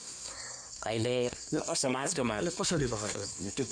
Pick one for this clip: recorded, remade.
remade